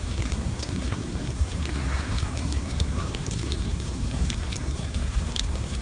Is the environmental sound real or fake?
fake